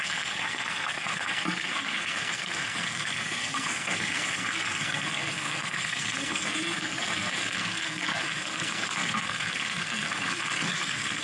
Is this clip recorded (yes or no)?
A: no